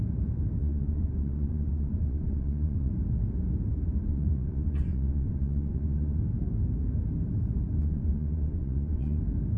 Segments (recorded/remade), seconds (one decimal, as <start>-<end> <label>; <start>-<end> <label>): 0.0-0.6 recorded; 0.6-2.9 remade; 2.9-4.0 recorded; 4.0-6.2 remade; 6.2-7.8 recorded; 7.8-9.2 remade; 9.2-9.6 recorded